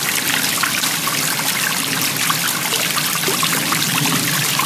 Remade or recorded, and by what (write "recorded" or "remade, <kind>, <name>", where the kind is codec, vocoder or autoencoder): recorded